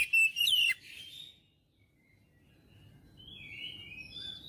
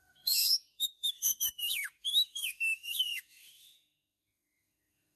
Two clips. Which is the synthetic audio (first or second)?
second